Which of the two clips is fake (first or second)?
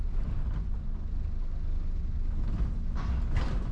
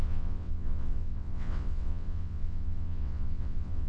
second